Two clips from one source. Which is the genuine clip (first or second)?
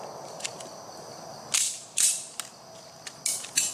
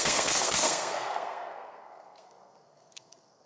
first